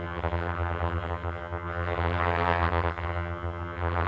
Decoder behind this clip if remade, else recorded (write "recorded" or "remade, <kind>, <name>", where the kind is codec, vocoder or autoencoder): remade, vocoder, HiFi-GAN